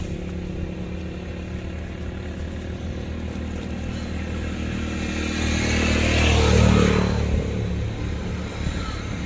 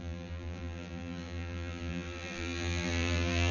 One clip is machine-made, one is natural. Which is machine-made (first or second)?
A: second